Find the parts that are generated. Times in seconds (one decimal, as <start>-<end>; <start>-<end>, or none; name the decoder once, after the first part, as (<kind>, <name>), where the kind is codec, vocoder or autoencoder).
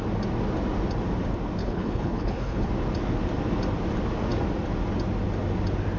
1.6-2.7 (codec, HILCodec)